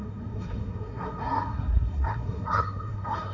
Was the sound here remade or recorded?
remade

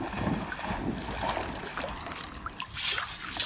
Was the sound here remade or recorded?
recorded